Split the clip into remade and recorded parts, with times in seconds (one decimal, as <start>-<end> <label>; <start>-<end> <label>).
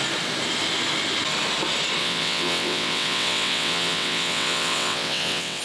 0.0-2.0 recorded; 2.0-5.6 remade